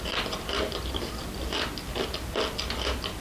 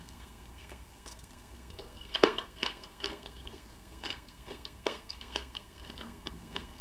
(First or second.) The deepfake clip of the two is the second